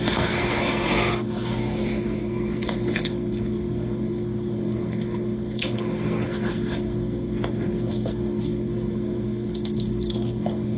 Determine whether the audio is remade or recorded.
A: remade